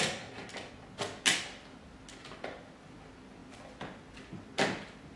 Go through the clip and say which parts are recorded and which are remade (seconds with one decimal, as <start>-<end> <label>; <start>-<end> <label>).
0.0-5.2 recorded